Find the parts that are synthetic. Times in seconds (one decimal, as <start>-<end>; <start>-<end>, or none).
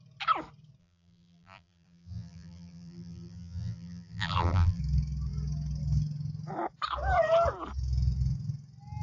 0.8-4.8